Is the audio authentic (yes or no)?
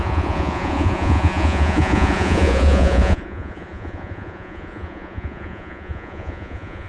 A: no